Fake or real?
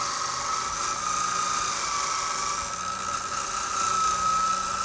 real